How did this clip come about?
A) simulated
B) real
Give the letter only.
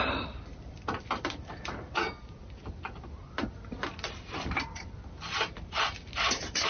A